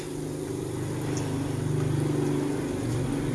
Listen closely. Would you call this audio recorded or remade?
recorded